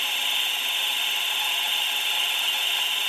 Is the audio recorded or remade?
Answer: recorded